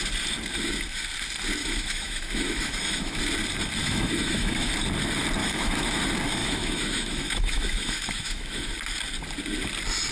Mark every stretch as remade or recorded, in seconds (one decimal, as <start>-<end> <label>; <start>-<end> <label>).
0.0-1.6 recorded; 1.6-3.2 remade; 3.2-3.8 recorded; 3.8-4.7 remade; 4.7-5.4 recorded; 5.4-6.0 remade; 6.0-6.4 recorded; 6.4-8.7 remade; 8.7-10.1 recorded